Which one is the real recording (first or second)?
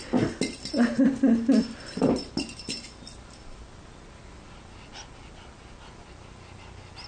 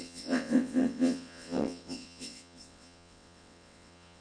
first